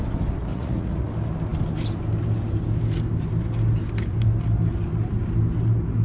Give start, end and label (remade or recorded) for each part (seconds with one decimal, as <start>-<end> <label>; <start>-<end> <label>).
0.0-0.5 recorded; 0.5-1.1 remade; 1.1-6.0 recorded